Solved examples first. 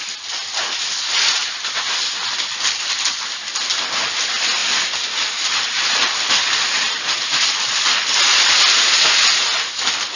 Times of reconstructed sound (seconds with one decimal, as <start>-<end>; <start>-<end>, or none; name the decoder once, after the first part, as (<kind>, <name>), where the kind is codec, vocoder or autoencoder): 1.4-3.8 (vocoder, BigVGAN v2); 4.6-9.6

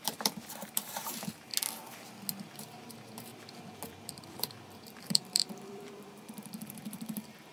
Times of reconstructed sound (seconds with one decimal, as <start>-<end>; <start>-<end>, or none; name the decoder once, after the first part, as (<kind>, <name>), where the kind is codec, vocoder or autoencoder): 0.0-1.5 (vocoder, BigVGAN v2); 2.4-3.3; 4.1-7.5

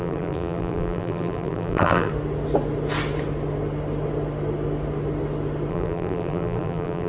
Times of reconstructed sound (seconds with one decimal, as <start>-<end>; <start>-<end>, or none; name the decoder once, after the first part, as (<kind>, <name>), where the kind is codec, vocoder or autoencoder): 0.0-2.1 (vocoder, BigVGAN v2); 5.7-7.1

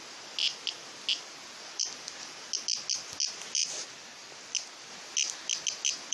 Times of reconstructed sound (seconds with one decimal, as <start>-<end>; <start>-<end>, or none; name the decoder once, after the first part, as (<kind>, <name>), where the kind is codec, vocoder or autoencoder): none